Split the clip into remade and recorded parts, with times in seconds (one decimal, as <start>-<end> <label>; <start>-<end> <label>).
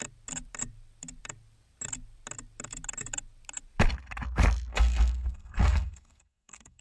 0.0-4.7 recorded; 4.7-6.8 remade